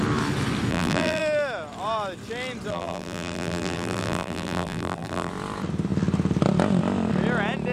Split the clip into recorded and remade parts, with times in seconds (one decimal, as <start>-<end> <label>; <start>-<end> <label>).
0.0-0.7 recorded; 0.7-1.2 remade; 1.2-2.7 recorded; 2.7-5.3 remade; 5.3-7.7 recorded